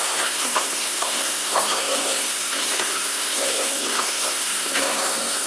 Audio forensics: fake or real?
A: fake